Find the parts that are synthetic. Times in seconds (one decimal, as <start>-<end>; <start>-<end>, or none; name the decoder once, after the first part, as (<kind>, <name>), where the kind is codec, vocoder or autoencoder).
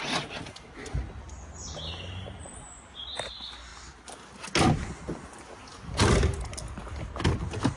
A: none